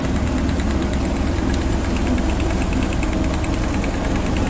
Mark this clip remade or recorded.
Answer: recorded